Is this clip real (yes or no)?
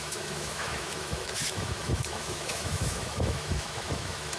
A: no